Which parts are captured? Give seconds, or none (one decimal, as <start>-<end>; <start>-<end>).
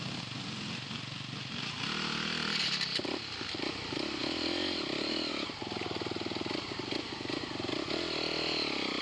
0.0-9.0